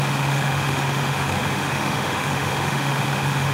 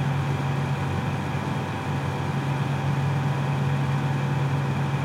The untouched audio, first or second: second